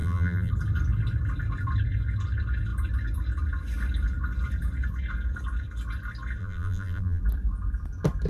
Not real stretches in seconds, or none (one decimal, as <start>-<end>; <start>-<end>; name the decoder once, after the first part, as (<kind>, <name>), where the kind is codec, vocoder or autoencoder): 0.0-0.5 (vocoder, BigVGAN v2); 6.4-7.2